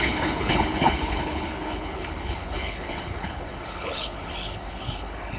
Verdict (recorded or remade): remade